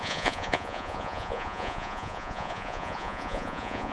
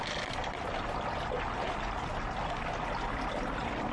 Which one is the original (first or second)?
second